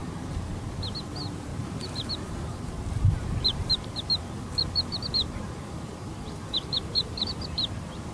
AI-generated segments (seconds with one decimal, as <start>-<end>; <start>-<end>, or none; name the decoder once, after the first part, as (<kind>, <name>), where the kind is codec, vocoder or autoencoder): 0.0-0.6 (vocoder, BigVGAN v2); 1.5-3.7; 5.2-7.4